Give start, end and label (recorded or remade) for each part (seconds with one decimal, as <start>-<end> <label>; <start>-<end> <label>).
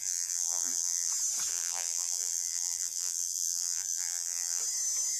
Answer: 0.0-1.1 remade; 1.1-1.5 recorded; 1.5-4.6 remade; 4.6-5.2 recorded